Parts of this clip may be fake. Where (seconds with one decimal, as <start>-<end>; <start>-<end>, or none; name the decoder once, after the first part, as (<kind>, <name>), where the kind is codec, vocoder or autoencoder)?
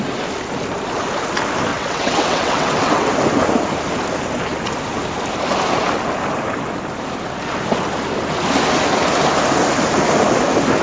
1.7-3.1 (vocoder, WaveNeXt)